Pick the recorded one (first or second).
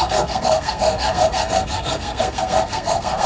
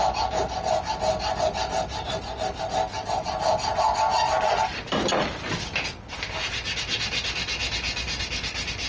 second